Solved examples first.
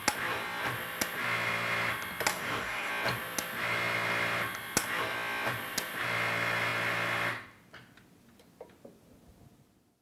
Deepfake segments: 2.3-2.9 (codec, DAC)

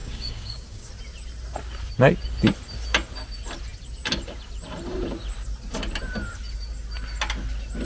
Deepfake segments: 0.0-0.9 (codec, DAC)